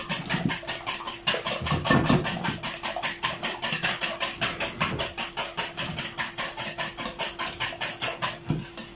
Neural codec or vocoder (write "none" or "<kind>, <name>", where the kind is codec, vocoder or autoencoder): none